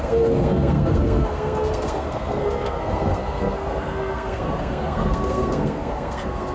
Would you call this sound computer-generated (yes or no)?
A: yes